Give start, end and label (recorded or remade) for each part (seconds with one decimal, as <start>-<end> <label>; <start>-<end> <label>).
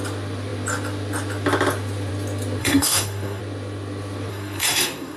0.0-2.6 recorded; 2.6-3.4 remade; 3.4-4.3 recorded; 4.3-5.2 remade